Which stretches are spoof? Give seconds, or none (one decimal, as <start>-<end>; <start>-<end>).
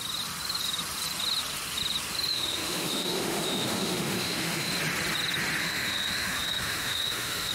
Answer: 2.3-4.7; 5.6-7.5